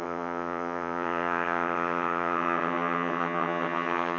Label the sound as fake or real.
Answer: fake